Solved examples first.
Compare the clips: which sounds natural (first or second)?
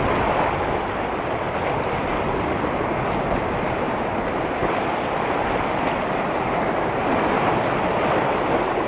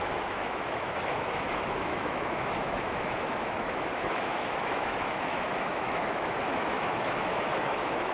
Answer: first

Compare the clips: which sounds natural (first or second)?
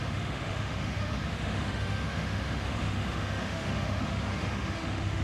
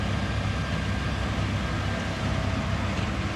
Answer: second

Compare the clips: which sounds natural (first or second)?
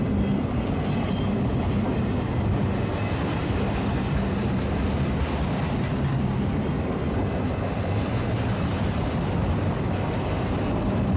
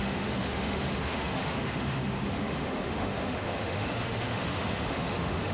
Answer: first